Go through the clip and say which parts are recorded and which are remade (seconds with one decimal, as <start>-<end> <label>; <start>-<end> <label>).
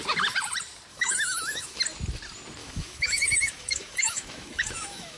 0.0-0.9 recorded; 0.9-1.8 remade; 1.8-2.6 recorded; 2.6-5.2 remade